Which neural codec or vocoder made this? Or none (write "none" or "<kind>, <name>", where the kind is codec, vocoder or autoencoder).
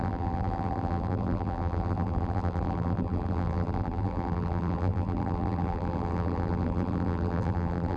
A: vocoder, BigVGAN v2